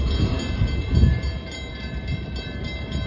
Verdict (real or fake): real